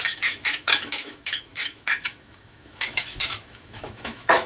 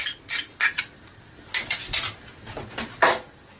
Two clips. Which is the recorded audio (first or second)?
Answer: second